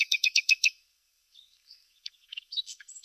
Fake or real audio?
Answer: fake